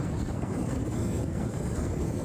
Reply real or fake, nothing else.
fake